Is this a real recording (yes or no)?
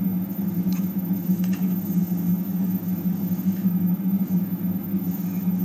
no